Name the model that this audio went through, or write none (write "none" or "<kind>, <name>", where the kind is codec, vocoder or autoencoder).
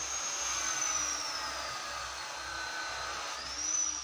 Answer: none